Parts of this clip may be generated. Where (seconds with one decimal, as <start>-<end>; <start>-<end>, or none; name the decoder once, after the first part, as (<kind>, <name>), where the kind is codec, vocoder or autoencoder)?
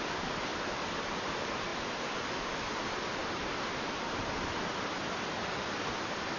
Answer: 0.0-0.5 (vocoder, BigVGAN v2); 1.1-6.4